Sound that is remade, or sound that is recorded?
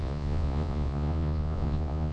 remade